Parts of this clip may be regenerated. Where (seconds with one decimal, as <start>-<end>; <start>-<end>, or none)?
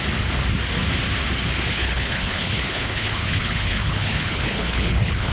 1.7-5.3